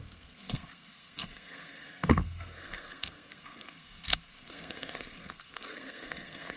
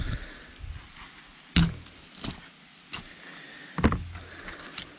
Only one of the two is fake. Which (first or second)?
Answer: first